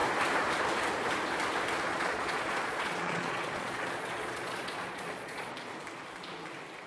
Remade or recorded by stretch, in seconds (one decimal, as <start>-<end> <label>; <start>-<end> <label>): 0.0-1.9 recorded; 1.9-5.5 remade; 5.5-6.9 recorded